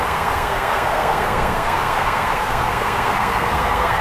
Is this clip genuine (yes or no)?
no